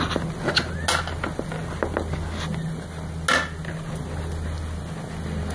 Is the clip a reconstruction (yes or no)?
no